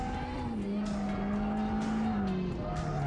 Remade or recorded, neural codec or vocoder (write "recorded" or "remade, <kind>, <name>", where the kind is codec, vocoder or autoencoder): recorded